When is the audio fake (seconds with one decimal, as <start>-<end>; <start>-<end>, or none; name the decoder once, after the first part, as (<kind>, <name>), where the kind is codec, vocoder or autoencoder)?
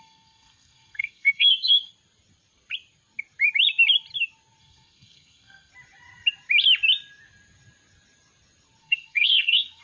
0.0-1.9 (codec, SNAC); 4.6-5.7; 8.8-9.8